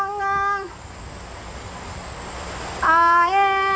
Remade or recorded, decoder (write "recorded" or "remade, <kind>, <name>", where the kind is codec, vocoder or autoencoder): recorded